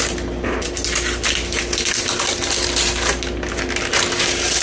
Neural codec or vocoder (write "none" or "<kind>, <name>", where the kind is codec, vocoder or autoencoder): none